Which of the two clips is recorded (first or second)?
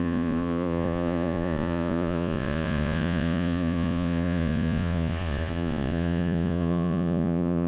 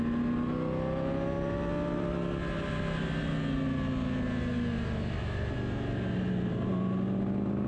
second